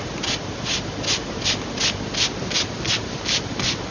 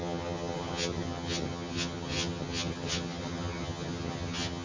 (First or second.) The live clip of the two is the first